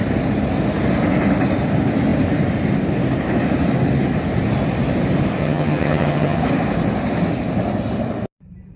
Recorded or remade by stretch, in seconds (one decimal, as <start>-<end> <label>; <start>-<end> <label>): 0.0-5.4 recorded; 5.4-6.4 remade; 6.4-8.8 recorded

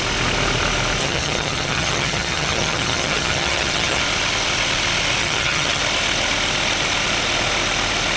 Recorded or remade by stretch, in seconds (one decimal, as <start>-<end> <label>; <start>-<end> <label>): 0.0-1.0 recorded; 1.0-4.0 remade; 4.0-5.2 recorded; 5.2-5.8 remade; 5.8-8.2 recorded

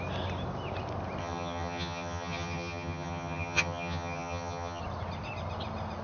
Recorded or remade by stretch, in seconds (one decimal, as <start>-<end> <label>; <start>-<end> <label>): 0.0-1.2 recorded; 1.2-4.8 remade; 4.8-6.0 recorded

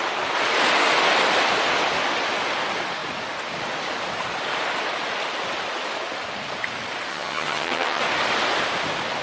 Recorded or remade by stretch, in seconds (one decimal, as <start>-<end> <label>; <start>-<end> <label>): 0.0-7.1 recorded; 7.1-8.0 remade; 8.0-9.2 recorded

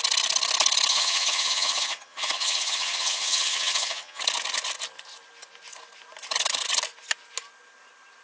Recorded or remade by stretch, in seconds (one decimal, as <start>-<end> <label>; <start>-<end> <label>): 0.0-0.9 recorded; 0.9-4.2 remade; 4.2-8.2 recorded

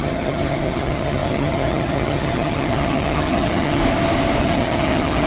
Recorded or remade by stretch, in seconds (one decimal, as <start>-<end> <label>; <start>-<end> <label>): 0.0-3.8 remade; 3.8-4.4 recorded; 4.4-5.3 remade

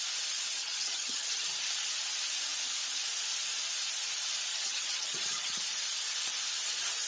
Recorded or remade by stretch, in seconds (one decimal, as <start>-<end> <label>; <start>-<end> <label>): 0.0-0.6 recorded; 0.6-1.5 remade; 1.5-4.5 recorded; 4.5-5.6 remade; 5.6-7.1 recorded

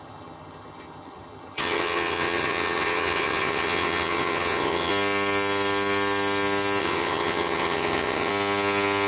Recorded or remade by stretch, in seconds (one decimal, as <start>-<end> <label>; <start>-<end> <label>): 0.0-4.9 remade; 4.9-6.8 recorded; 6.8-8.3 remade; 8.3-9.1 recorded